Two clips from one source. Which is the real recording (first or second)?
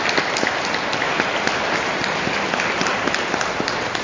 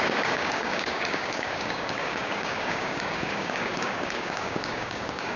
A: first